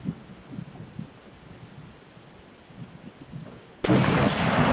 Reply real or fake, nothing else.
real